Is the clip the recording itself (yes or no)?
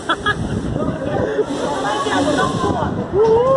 yes